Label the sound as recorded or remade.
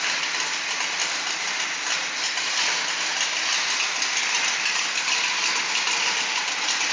recorded